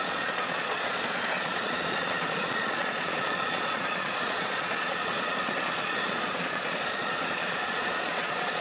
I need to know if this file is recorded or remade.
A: remade